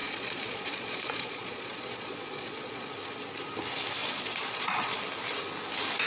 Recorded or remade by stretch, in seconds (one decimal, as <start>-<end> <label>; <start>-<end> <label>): 0.0-2.9 remade; 2.9-4.0 recorded; 4.0-5.0 remade; 5.0-6.1 recorded